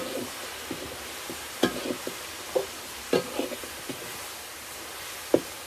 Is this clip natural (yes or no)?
yes